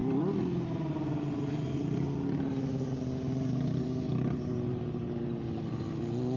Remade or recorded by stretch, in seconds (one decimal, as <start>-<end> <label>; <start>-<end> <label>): 0.0-6.4 recorded